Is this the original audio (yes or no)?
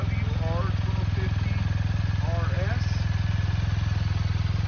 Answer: yes